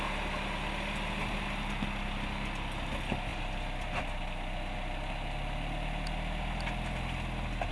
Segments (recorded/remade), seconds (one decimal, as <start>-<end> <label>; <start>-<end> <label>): 0.0-7.7 recorded